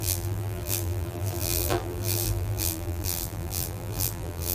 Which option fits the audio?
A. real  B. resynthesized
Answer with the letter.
B